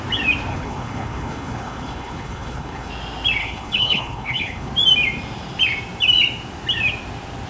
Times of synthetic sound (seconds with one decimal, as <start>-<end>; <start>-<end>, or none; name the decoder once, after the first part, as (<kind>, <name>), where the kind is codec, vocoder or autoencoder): 0.5-2.9 (codec, HILCodec); 3.4-4.7